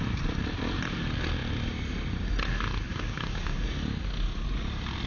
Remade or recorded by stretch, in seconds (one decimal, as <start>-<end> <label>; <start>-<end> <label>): 0.0-2.9 recorded; 2.9-3.6 remade; 3.6-5.1 recorded